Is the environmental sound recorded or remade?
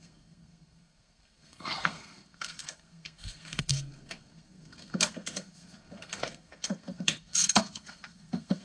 remade